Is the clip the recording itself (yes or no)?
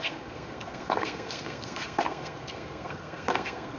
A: no